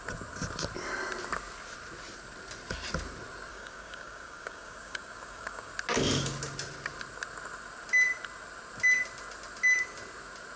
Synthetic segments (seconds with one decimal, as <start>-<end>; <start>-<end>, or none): 3.5-5.7